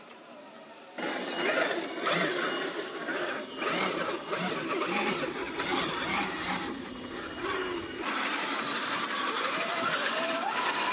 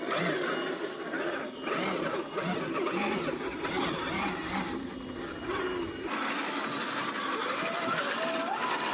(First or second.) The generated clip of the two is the first